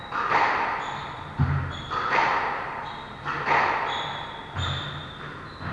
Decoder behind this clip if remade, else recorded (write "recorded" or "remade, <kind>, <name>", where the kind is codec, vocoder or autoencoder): recorded